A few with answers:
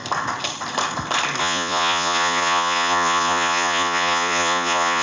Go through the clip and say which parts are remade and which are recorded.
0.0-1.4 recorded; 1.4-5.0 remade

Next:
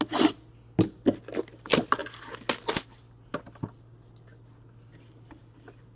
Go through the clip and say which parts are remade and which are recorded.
0.0-6.0 recorded

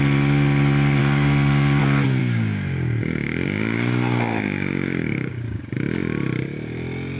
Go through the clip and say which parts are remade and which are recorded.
0.0-1.0 recorded; 1.0-1.8 remade; 1.8-2.2 recorded; 2.2-5.6 remade; 5.6-7.2 recorded

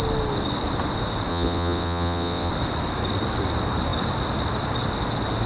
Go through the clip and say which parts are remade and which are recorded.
0.0-1.3 recorded; 1.3-2.5 remade; 2.5-5.5 recorded

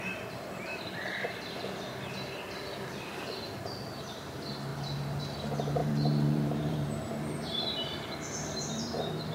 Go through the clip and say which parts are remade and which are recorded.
0.0-5.8 recorded; 5.8-8.8 remade; 8.8-9.3 recorded